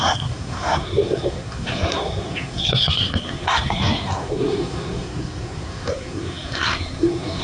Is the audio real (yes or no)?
no